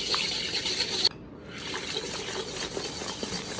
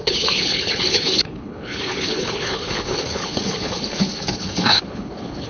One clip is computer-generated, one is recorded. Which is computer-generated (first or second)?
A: second